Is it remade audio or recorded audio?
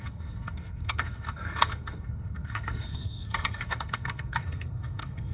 remade